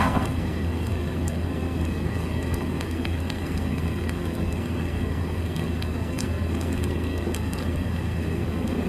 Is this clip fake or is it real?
fake